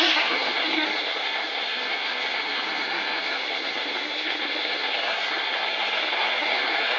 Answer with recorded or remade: remade